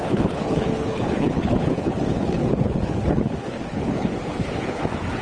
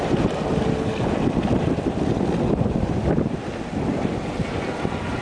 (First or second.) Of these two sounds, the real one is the second